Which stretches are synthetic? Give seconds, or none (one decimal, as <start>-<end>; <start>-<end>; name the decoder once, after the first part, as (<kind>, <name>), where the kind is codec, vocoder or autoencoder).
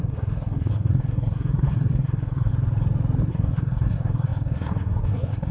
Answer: 0.0-2.5 (codec, SNAC); 3.3-5.5